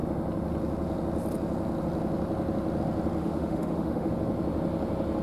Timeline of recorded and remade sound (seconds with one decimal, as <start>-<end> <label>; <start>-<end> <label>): 0.0-3.2 recorded; 3.2-4.1 remade; 4.1-5.2 recorded

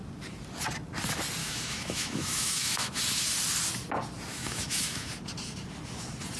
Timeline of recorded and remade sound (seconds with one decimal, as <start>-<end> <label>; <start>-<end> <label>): 0.0-1.4 recorded; 1.4-3.0 remade; 3.0-4.3 recorded; 4.3-5.1 remade; 5.1-6.4 recorded

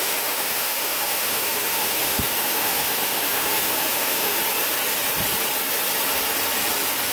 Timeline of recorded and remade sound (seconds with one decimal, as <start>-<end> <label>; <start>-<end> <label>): 0.0-4.4 remade; 4.4-7.1 recorded

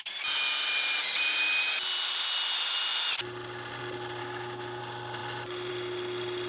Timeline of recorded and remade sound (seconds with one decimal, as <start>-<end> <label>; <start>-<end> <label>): 0.0-4.2 recorded; 4.2-4.8 remade; 4.8-6.5 recorded

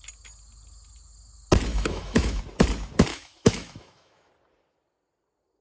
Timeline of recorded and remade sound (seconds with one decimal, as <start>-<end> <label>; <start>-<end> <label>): 0.0-1.7 recorded; 1.7-2.4 remade; 2.4-3.1 recorded; 3.1-4.3 remade; 4.3-5.6 recorded

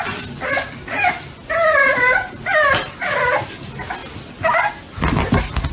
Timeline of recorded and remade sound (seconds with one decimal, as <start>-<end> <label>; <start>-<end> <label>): 0.0-5.7 recorded

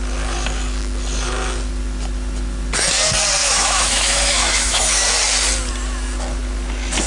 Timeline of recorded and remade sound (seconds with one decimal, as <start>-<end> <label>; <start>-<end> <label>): 0.0-3.4 recorded; 3.4-4.8 remade; 4.8-7.1 recorded

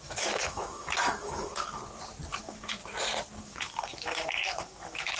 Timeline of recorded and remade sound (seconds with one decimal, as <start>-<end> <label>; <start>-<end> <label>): 0.0-1.8 remade; 1.8-2.4 recorded; 2.4-2.8 remade; 2.8-3.4 recorded; 3.4-5.2 remade